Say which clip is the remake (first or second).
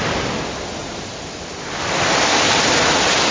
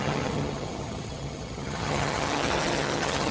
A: second